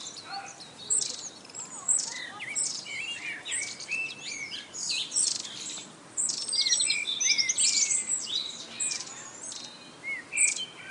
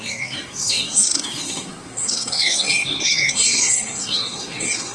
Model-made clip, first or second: second